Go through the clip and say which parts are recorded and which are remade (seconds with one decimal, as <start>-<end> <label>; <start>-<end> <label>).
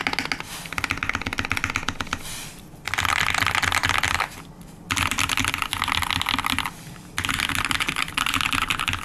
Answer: 0.0-9.0 recorded